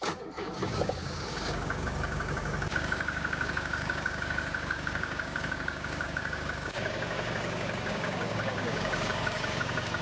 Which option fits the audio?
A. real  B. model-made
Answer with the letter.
B